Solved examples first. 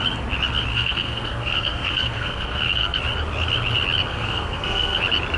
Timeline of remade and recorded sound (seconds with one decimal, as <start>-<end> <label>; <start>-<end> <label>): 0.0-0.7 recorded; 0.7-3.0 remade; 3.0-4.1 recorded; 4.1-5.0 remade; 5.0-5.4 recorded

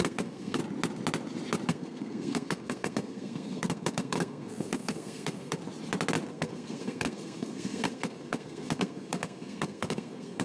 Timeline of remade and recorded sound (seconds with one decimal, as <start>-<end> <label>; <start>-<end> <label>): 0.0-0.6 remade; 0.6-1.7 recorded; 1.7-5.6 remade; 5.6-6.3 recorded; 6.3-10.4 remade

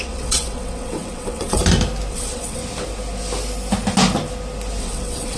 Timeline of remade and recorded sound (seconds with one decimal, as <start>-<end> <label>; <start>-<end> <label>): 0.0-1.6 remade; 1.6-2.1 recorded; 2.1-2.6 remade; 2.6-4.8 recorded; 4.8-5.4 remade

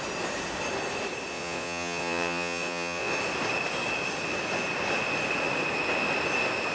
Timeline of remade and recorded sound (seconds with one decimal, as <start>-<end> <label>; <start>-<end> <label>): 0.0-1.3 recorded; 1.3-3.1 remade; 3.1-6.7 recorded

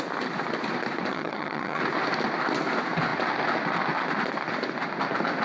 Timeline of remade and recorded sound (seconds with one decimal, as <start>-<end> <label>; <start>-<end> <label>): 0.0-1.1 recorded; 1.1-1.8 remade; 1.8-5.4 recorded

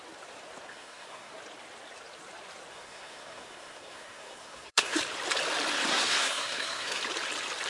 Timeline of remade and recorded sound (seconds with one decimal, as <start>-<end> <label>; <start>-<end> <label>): 0.0-0.7 recorded; 0.7-1.3 remade; 1.3-2.7 recorded; 2.7-5.0 remade; 5.0-5.9 recorded; 5.9-7.0 remade; 7.0-7.7 recorded

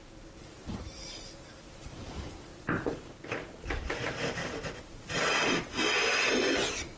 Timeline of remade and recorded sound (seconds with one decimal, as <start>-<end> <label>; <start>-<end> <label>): 0.0-2.5 remade; 2.5-3.2 recorded; 3.2-4.4 remade; 4.4-7.0 recorded